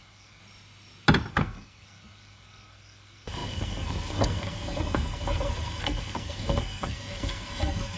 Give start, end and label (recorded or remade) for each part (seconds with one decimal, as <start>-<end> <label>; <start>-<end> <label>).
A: 0.0-0.4 remade; 0.4-1.3 recorded; 1.3-8.0 remade